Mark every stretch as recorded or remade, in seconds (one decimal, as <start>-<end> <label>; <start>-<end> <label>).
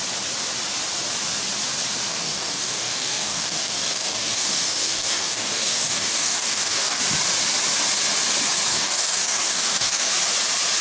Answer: 0.0-2.1 recorded; 2.1-7.0 remade; 7.0-8.7 recorded; 8.7-10.1 remade; 10.1-10.8 recorded